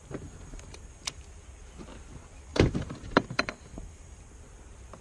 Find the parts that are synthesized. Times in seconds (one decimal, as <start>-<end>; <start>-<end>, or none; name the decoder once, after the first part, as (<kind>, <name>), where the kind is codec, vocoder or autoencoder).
0.0-1.2 (vocoder, BigVGAN v2); 2.5-4.2